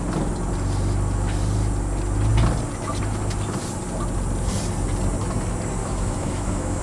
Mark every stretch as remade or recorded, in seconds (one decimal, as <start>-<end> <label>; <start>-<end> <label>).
0.0-5.8 recorded; 5.8-6.8 remade